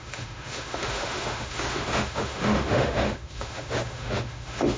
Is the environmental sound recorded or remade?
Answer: remade